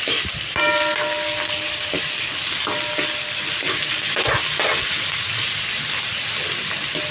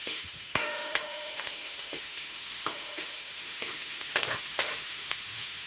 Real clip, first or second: first